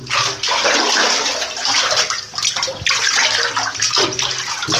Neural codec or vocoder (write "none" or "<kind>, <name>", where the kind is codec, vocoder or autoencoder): none